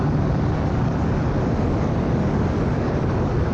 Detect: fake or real fake